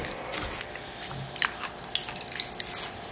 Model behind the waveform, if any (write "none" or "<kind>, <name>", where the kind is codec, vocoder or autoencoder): none